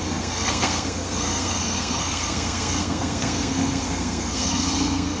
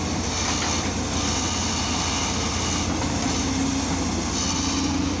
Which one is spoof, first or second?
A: first